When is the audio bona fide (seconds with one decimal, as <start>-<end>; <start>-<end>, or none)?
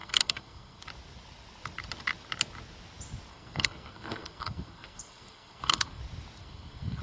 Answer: 0.8-3.3; 6.0-6.4